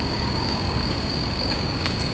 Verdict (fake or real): fake